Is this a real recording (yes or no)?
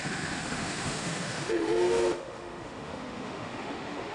no